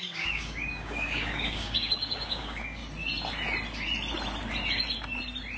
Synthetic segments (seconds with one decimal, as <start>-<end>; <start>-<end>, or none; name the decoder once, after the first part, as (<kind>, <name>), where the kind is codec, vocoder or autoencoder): 0.0-2.8 (codec, DAC)